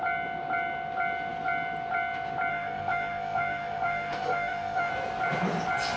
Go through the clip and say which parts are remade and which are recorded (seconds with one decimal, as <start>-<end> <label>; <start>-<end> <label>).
0.0-2.5 recorded; 2.5-4.9 remade; 4.9-6.0 recorded